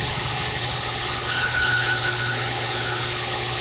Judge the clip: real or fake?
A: fake